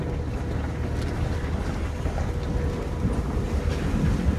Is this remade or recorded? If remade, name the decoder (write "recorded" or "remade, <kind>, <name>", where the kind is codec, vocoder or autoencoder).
recorded